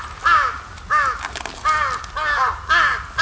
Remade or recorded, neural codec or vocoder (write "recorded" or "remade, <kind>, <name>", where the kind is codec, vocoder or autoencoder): recorded